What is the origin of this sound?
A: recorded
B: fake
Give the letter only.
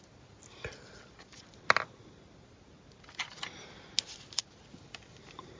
A